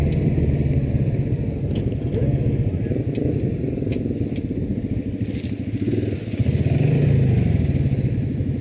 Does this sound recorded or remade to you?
recorded